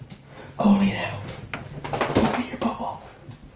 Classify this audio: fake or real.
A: real